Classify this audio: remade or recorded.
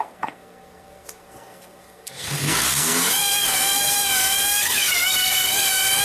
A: remade